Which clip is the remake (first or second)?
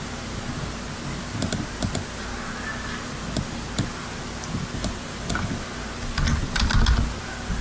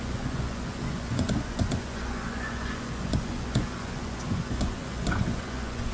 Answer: second